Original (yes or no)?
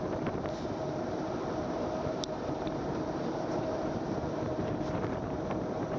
no